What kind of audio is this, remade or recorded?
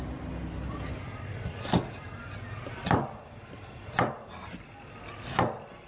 recorded